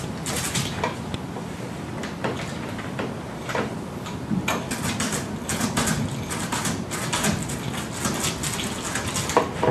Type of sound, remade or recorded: recorded